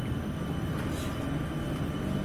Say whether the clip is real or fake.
real